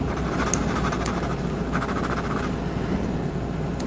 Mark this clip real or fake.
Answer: real